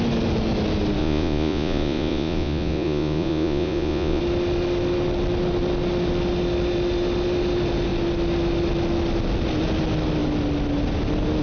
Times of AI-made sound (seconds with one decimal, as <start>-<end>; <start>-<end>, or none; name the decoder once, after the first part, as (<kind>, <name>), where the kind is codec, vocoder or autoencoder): 1.0-4.2 (vocoder, Vocos)